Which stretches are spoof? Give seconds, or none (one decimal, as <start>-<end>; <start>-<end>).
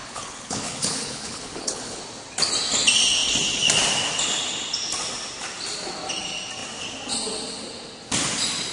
0.0-2.0